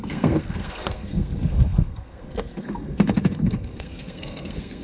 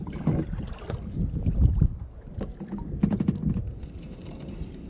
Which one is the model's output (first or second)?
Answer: first